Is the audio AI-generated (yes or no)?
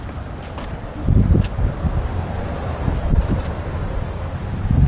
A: yes